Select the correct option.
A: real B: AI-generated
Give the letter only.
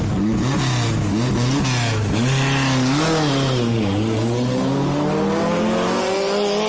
A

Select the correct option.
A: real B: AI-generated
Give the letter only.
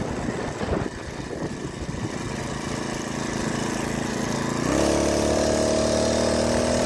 A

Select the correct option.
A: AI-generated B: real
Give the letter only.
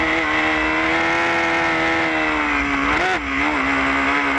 B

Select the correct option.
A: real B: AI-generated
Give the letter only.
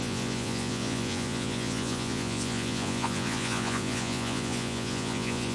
B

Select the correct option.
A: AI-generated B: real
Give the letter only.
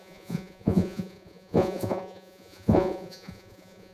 A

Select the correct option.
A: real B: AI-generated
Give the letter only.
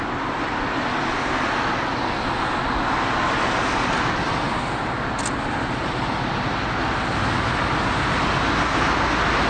A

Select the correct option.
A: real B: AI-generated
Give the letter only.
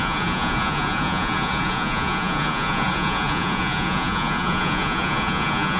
B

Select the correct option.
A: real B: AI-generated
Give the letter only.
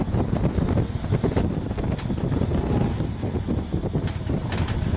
A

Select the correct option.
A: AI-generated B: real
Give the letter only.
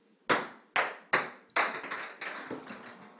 B